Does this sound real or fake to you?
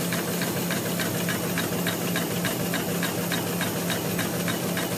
real